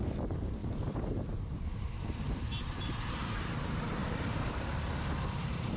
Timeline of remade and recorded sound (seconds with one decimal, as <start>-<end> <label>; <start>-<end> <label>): 0.0-5.8 remade